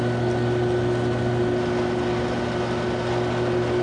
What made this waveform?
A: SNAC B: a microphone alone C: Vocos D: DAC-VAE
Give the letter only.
B